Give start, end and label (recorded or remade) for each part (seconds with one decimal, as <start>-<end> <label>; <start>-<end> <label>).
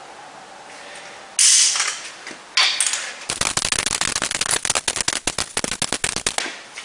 0.0-6.8 recorded